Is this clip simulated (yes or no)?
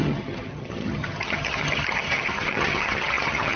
yes